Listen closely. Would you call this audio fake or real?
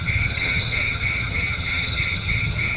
fake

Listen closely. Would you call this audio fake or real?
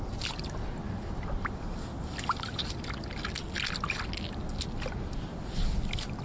real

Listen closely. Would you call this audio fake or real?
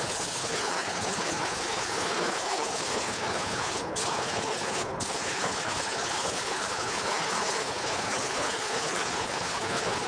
fake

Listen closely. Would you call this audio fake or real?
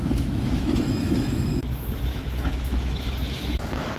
fake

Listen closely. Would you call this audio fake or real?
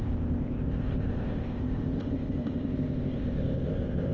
fake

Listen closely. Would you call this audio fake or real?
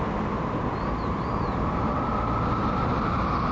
real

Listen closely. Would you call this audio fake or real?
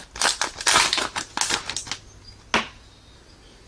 real